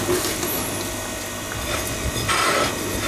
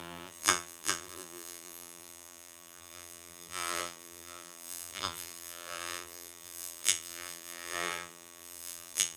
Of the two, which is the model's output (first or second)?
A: second